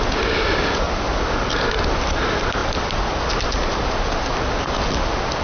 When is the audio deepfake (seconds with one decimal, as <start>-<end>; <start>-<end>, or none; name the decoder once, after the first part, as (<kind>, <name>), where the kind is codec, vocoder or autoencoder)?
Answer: none